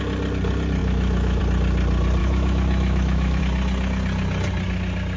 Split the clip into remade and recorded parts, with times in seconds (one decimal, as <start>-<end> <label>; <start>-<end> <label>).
0.0-0.8 recorded; 0.8-1.4 remade; 1.4-2.2 recorded; 2.2-3.4 remade; 3.4-5.2 recorded